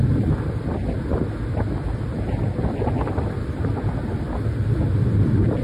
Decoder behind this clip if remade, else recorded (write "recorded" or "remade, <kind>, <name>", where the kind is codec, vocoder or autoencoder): remade, vocoder, BigVGAN v2